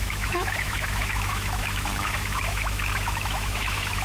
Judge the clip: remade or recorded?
remade